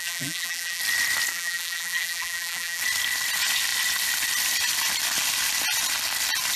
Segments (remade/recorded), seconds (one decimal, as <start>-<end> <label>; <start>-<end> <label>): 0.0-0.8 remade; 0.8-1.3 recorded; 1.3-2.8 remade; 2.8-6.6 recorded